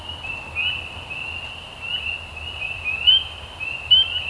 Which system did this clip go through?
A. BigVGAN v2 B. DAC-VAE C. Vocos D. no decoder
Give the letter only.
D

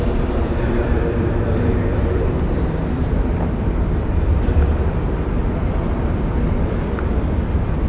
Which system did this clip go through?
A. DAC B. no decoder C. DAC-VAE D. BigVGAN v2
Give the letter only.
D